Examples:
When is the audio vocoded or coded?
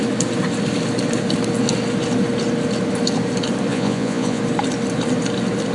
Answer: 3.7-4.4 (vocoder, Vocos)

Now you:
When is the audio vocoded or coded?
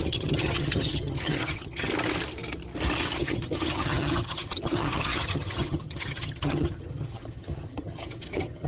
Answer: 0.0-1.9 (vocoder, HiFi-GAN); 3.2-8.7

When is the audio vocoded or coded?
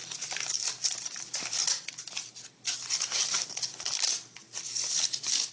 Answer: 0.5-1.6 (vocoder, BigVGAN v2); 4.9-5.5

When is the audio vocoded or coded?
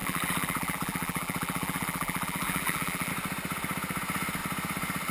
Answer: 0.0-3.1 (vocoder, BigVGAN v2)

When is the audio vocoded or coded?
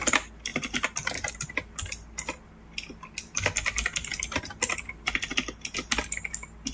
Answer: none